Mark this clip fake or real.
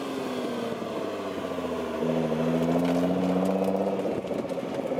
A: real